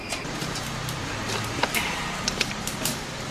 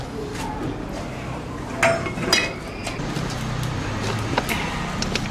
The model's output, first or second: first